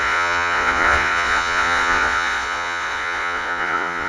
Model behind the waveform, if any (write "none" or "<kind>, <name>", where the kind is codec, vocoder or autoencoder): vocoder, Vocos